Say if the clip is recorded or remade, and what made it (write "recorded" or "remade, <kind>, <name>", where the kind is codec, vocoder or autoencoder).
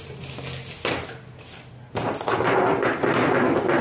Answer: recorded